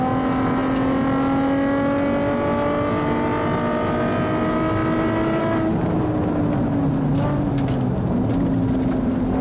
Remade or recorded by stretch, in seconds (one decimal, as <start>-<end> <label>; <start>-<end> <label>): 0.0-9.4 recorded